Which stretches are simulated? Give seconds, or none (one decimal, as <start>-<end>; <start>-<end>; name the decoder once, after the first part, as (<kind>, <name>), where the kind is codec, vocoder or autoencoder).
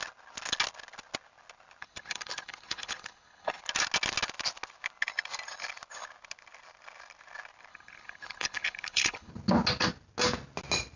1.8-3.6 (codec, HILCodec); 7.7-9.3